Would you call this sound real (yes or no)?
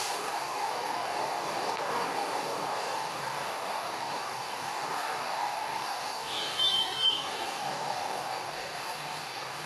no